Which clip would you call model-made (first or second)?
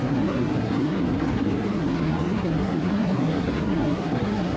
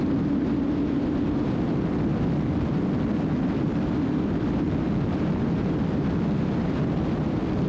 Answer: first